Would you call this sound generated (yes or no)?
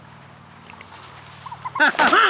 no